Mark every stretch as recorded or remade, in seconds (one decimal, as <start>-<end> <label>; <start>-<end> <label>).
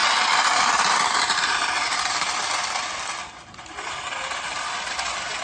0.0-5.4 recorded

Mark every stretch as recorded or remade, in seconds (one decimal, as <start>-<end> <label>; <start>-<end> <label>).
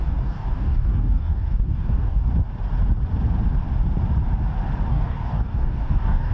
0.0-2.3 remade; 2.3-4.9 recorded; 4.9-6.3 remade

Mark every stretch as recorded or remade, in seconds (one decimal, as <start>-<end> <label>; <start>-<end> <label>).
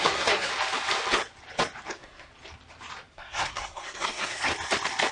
0.0-0.5 remade; 0.5-1.9 recorded; 1.9-2.3 remade; 2.3-3.1 recorded; 3.1-4.5 remade; 4.5-5.1 recorded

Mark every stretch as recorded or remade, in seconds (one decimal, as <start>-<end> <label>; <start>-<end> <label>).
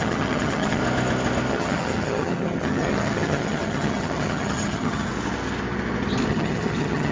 0.0-0.8 remade; 0.8-1.5 recorded; 1.5-5.1 remade; 5.1-6.3 recorded; 6.3-7.1 remade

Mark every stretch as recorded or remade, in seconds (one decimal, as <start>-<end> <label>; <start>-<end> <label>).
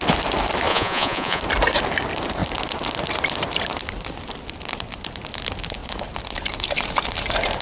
0.0-0.7 recorded; 0.7-1.4 remade; 1.4-7.6 recorded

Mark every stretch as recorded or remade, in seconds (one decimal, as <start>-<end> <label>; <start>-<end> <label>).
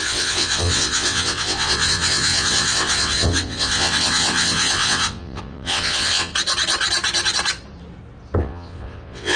0.0-6.3 remade; 6.3-8.4 recorded; 8.4-9.4 remade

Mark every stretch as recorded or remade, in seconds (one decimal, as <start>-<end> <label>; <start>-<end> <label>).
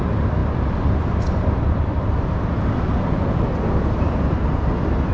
0.0-5.1 recorded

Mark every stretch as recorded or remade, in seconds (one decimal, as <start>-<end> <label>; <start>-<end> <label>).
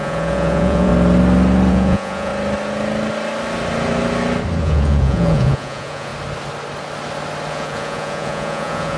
0.0-0.9 remade; 0.9-1.7 recorded; 1.7-2.3 remade; 2.3-4.6 recorded; 4.6-6.1 remade; 6.1-7.5 recorded; 7.5-9.0 remade